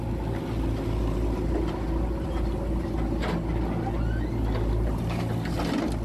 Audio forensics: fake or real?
real